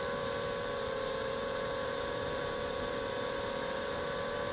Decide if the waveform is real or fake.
fake